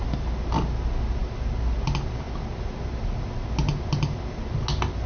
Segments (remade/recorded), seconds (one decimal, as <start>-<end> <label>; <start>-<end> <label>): 0.0-5.1 recorded